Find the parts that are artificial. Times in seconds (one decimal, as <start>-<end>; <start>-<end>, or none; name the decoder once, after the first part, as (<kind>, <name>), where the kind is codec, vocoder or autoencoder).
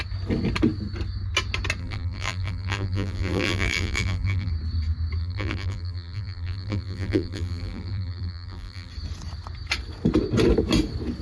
1.8-4.5 (vocoder, BigVGAN v2); 5.2-8.9